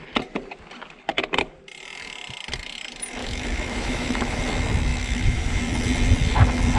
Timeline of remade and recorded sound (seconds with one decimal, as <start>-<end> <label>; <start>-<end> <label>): 0.0-3.2 recorded; 3.2-4.4 remade; 4.4-4.9 recorded; 4.9-5.6 remade; 5.6-6.8 recorded